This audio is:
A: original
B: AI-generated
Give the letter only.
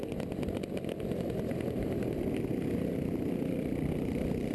A